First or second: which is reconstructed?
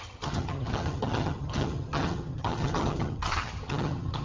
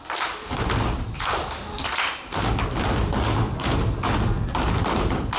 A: first